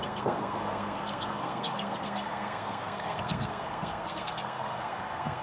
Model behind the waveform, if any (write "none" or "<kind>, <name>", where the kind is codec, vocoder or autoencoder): codec, SNAC